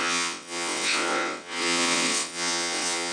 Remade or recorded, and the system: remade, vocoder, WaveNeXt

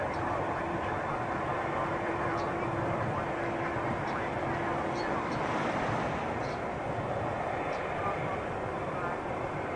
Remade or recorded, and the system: remade, vocoder, BigVGAN v2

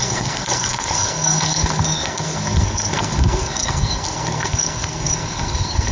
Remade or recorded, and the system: remade, codec, SNAC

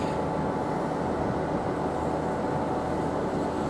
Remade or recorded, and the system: recorded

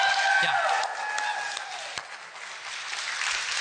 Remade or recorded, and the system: recorded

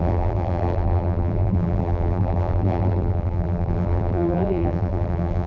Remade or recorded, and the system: remade, vocoder, BigVGAN v2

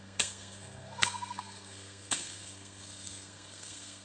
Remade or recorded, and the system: remade, codec, SNAC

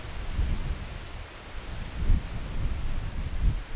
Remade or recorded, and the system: recorded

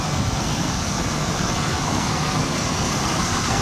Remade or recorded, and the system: remade, codec, SNAC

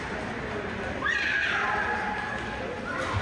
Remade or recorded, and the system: recorded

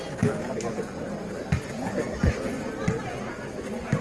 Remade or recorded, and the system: recorded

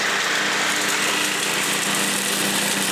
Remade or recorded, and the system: recorded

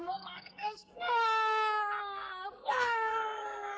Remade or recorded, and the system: remade, codec, SNAC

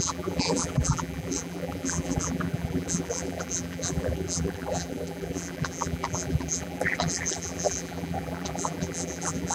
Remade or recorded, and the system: remade, vocoder, BigVGAN v2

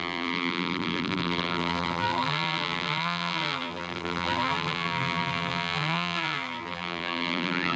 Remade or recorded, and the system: remade, vocoder, BigVGAN v2